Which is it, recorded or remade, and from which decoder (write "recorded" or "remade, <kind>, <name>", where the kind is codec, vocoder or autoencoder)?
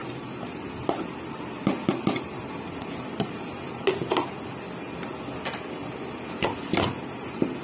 recorded